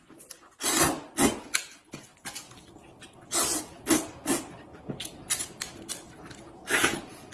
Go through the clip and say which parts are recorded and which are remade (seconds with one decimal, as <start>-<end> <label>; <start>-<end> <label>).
0.0-7.3 recorded